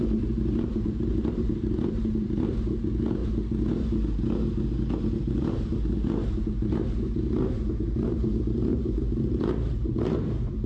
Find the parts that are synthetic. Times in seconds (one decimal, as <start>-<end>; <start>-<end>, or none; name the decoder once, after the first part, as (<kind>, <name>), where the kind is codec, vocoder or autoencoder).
0.0-3.2 (vocoder, BigVGAN v2); 5.1-10.7